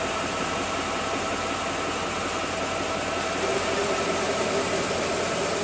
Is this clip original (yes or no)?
yes